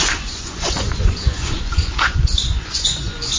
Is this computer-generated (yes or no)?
yes